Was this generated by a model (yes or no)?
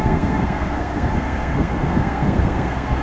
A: yes